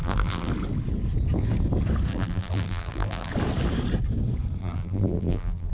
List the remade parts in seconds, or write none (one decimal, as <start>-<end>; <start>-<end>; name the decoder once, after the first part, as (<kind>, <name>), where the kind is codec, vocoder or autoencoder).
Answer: 0.0-0.5 (vocoder, BigVGAN v2); 2.1-3.3; 4.6-5.7